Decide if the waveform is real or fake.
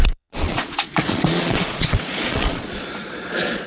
fake